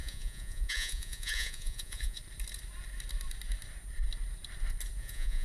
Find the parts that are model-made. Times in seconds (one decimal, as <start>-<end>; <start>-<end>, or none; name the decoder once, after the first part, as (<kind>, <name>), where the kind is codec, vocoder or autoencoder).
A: 0.0-2.2 (vocoder, Vocos); 5.0-5.4